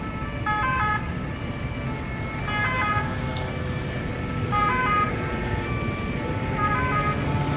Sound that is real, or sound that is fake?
real